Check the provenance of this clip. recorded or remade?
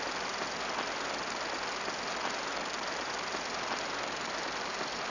recorded